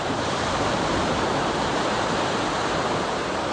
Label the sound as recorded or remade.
recorded